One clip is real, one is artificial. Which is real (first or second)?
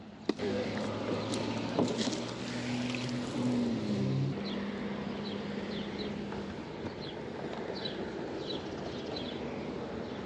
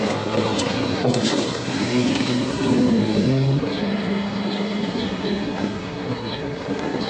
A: first